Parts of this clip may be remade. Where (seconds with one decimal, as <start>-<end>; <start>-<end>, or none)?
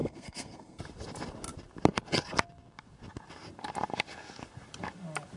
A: 0.0-0.8